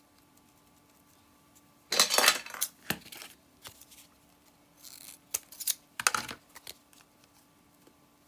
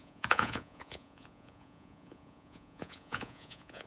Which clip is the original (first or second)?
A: first